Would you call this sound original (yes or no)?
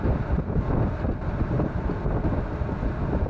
yes